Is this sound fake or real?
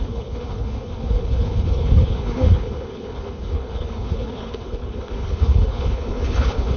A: fake